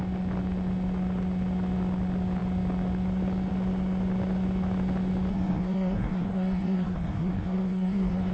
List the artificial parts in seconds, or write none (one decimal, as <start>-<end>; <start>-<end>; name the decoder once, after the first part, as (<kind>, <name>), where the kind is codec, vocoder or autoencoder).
5.3-8.3 (codec, SNAC)